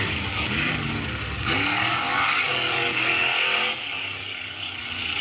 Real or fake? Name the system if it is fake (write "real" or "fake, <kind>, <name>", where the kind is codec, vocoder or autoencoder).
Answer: fake, codec, DAC